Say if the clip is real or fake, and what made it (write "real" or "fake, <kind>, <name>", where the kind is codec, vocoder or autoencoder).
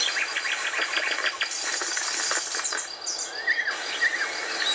real